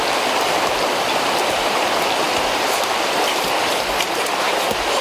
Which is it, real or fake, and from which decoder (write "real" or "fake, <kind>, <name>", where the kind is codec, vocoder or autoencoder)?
real